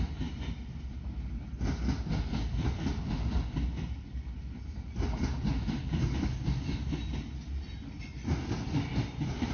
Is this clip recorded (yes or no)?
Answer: yes